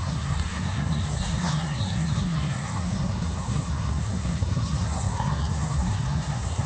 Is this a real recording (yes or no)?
no